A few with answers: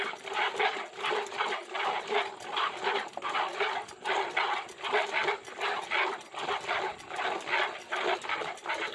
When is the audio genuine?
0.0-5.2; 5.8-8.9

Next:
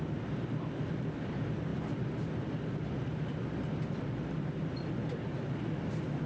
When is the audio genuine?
0.0-6.3

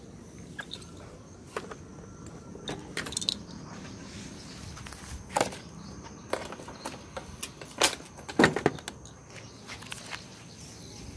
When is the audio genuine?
0.0-11.2